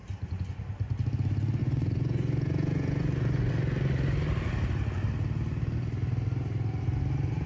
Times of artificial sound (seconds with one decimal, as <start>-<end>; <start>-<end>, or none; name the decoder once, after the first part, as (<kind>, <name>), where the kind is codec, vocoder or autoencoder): 1.6-3.5 (vocoder, Vocos)

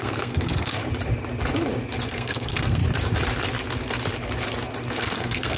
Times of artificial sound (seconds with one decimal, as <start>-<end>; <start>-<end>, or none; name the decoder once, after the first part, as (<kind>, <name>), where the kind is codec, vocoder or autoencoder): 0.0-0.8 (codec, SNAC); 2.1-2.8; 5.0-5.6

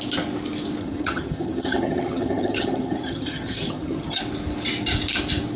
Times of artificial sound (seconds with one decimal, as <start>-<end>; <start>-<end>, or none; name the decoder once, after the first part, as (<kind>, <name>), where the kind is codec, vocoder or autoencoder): 0.8-4.2 (vocoder, HiFi-GAN)

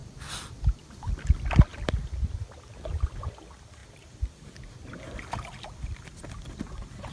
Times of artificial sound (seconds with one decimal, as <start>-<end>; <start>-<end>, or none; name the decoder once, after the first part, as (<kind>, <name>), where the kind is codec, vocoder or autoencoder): 0.0-1.1 (vocoder, BigVGAN v2)

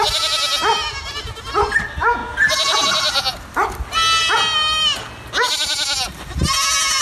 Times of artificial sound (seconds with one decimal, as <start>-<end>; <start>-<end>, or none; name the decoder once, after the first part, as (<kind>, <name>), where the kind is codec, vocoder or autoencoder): none

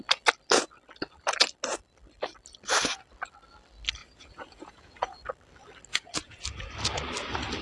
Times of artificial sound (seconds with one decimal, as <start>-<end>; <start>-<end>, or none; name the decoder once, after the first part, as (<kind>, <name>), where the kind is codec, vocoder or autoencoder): 4.0-5.2 (vocoder, Vocos); 5.9-6.4

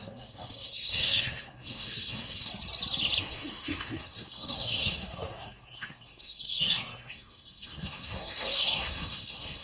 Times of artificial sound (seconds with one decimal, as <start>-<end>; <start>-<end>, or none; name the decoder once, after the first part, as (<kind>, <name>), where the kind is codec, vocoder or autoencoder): 0.0-2.5 (codec, SNAC); 3.2-9.6